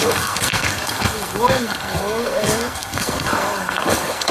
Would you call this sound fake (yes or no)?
yes